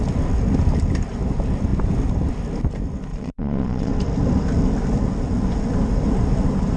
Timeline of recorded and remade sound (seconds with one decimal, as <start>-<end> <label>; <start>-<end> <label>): 0.0-3.1 recorded; 3.1-3.9 remade; 3.9-6.8 recorded